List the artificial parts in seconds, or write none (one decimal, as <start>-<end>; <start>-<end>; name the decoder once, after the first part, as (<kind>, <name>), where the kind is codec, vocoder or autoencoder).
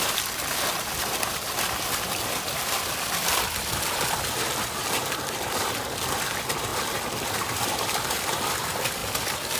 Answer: 0.0-9.6 (vocoder, BigVGAN v2)